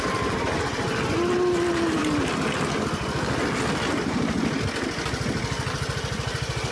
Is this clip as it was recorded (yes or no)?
yes